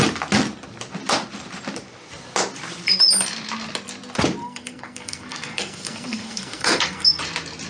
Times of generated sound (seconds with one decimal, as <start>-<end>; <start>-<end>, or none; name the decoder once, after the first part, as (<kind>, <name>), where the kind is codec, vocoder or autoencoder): 4.4-7.2 (codec, SNAC)